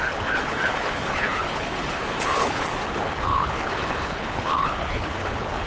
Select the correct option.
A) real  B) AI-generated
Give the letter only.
B